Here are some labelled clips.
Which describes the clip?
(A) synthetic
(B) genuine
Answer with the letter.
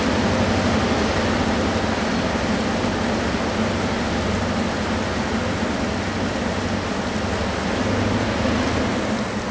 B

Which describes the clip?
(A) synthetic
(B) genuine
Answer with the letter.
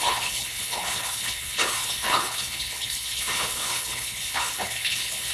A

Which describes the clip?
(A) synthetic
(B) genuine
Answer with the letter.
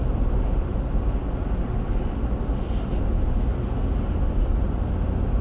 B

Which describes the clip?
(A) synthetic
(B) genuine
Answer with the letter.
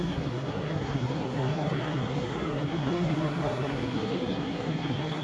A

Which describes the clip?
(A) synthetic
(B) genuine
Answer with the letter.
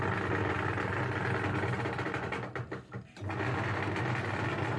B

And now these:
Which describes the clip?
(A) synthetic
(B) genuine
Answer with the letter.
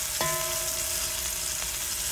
B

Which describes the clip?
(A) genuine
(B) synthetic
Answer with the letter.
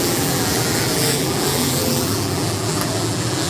B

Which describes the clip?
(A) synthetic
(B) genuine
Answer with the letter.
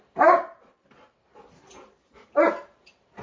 A